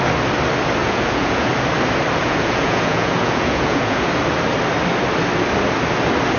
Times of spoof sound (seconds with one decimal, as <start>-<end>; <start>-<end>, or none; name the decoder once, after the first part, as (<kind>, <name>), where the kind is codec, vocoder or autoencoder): 0.8-1.5 (vocoder, Vocos); 2.2-4.1